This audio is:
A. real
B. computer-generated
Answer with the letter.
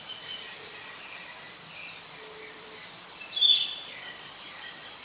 B